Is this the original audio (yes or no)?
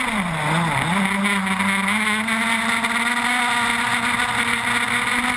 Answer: yes